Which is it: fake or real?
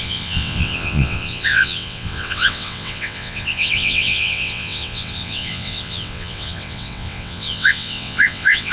fake